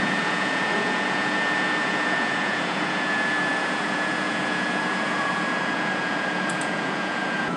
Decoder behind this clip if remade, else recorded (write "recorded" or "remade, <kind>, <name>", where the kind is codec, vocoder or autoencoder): remade, vocoder, Vocos